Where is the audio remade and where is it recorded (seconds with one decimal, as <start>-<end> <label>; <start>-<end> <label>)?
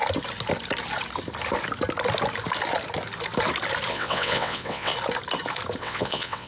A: 0.0-3.9 recorded; 3.9-4.9 remade; 4.9-5.8 recorded; 5.8-6.5 remade